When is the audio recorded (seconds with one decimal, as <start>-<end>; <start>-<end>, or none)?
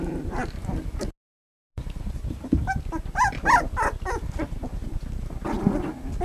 0.0-6.2